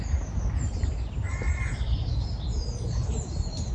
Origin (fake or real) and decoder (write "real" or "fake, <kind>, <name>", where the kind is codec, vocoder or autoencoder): real